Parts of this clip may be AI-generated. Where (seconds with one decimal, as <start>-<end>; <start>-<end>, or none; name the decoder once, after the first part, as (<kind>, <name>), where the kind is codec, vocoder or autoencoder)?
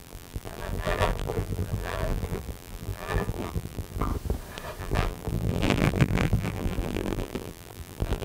0.0-4.1 (vocoder, BigVGAN v2); 4.8-8.2